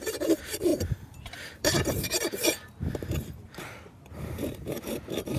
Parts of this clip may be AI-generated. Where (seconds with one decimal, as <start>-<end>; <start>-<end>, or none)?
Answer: 0.0-5.4